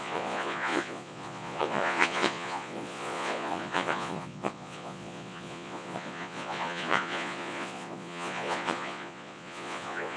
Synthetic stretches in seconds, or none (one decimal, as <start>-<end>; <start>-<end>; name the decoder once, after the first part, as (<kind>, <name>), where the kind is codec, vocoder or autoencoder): 0.0-10.2 (vocoder, Vocos)